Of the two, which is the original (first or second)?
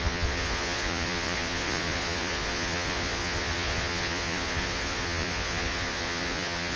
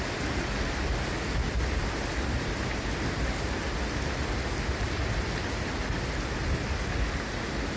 second